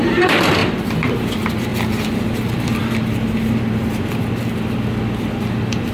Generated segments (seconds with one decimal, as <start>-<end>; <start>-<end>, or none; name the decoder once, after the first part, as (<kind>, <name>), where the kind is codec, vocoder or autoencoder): 0.0-0.6 (vocoder, BigVGAN v2); 1.2-5.9